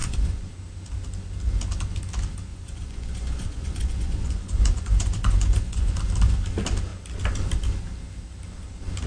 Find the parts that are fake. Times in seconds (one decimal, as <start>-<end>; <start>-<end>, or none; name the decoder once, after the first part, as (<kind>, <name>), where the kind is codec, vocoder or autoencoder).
0.0-0.5 (vocoder, Vocos); 2.5-6.0

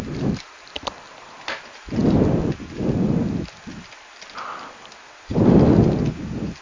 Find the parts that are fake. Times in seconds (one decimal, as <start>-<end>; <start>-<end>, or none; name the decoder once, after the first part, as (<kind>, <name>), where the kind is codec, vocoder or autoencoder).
none

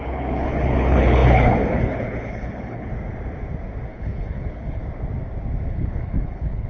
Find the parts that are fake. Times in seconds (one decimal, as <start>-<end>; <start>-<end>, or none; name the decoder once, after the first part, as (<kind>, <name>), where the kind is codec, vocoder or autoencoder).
0.0-2.9 (codec, HILCodec); 3.9-4.8; 5.7-6.7

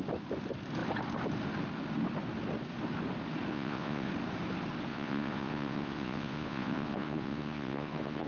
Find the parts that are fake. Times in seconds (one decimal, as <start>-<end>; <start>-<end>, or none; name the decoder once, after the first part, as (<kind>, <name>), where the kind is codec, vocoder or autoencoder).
3.5-4.1 (vocoder, Vocos); 4.9-8.3

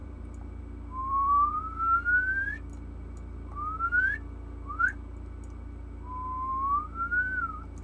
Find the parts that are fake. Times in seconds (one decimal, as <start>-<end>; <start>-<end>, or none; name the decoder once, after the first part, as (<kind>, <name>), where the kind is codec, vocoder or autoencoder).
0.0-0.6 (vocoder, BigVGAN v2); 1.0-1.6

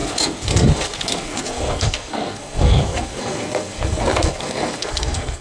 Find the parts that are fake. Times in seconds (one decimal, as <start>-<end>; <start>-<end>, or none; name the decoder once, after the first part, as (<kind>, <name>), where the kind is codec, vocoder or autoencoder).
0.0-5.4 (codec, SNAC)

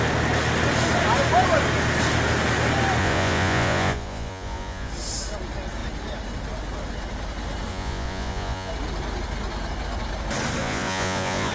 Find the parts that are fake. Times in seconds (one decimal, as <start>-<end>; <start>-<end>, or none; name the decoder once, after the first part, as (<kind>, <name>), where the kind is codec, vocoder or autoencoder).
3.0-4.9 (vocoder, Vocos); 7.7-8.7; 10.6-11.5

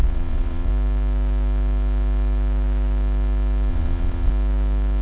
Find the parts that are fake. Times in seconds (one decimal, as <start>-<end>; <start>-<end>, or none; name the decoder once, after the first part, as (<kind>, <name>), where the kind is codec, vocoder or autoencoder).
0.0-0.7 (vocoder, Vocos); 3.7-4.3